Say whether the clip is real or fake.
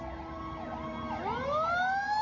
real